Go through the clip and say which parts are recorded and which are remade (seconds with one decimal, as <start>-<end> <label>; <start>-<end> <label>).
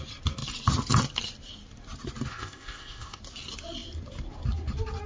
0.0-2.3 recorded; 2.3-3.2 remade; 3.2-5.1 recorded